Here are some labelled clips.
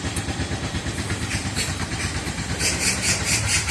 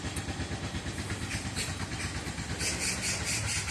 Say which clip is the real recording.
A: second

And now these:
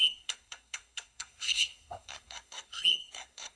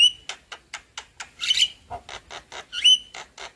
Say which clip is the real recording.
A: second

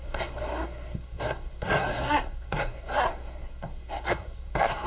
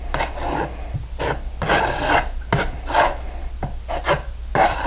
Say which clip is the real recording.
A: second